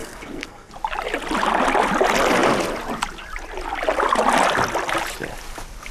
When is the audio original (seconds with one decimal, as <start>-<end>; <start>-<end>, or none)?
0.7-5.9